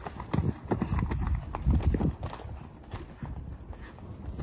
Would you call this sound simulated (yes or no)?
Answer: no